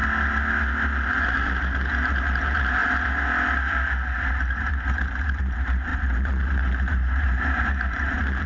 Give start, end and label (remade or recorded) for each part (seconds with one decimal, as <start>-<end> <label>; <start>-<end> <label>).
0.0-1.1 recorded; 1.1-8.5 remade